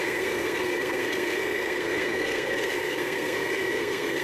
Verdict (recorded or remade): remade